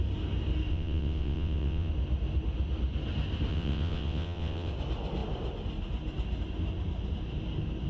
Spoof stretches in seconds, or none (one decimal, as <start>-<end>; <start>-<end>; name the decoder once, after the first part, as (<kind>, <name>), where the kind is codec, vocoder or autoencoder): 0.7-1.9 (vocoder, WaveNeXt); 3.5-4.7